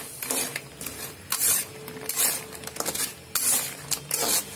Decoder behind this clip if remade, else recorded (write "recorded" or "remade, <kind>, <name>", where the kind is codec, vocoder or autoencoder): recorded